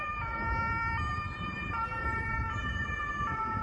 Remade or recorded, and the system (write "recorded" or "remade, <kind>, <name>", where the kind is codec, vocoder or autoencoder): recorded